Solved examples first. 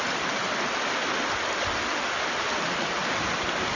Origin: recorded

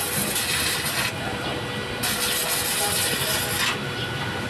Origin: recorded